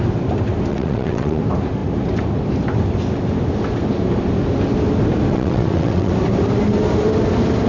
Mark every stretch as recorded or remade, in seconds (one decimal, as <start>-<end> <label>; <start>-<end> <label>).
0.0-0.7 recorded; 0.7-1.4 remade; 1.4-5.3 recorded; 5.3-6.1 remade; 6.1-7.7 recorded